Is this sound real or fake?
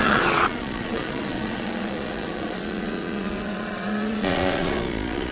fake